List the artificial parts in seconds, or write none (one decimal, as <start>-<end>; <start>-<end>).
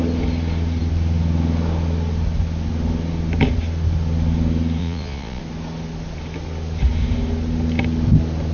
4.8-5.4